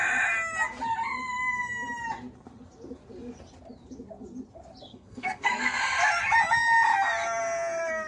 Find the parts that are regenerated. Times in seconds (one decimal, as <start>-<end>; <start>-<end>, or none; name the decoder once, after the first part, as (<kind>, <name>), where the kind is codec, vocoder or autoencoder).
4.9-5.8 (codec, SNAC)